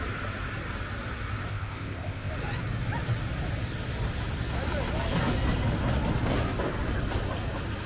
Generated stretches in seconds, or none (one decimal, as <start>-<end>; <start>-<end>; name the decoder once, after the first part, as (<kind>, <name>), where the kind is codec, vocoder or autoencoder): 1.5-2.3 (codec, ZipCodec)

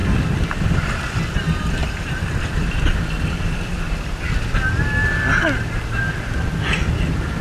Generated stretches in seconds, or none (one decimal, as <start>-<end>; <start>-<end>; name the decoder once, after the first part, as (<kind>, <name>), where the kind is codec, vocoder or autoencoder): 0.0-1.2 (vocoder, BigVGAN v2)

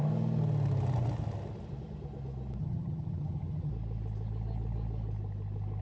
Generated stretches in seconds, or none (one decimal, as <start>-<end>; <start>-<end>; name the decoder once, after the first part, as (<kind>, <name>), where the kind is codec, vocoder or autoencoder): 2.6-3.7 (vocoder, HiFi-GAN)

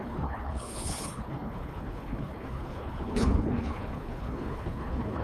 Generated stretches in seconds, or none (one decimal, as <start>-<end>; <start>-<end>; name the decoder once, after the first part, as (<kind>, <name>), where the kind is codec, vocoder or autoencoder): 0.0-5.2 (codec, HILCodec)

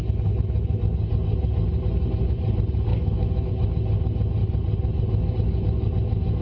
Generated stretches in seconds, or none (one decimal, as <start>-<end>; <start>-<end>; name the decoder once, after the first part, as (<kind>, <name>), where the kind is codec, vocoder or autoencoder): 2.9-3.5 (autoencoder, DAC-VAE)

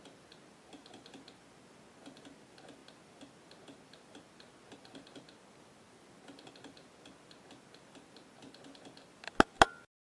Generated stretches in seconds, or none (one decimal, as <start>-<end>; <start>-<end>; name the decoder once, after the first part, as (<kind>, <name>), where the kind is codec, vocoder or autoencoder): none

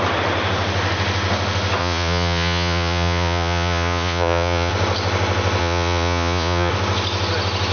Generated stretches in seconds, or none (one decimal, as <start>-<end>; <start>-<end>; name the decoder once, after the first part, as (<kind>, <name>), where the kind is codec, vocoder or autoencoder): 1.8-4.7 (vocoder, Vocos); 5.6-6.7

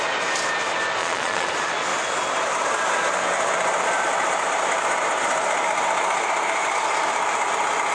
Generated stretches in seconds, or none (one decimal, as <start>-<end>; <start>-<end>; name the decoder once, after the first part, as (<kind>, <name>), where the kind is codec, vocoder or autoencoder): 1.0-1.5 (vocoder, Vocos)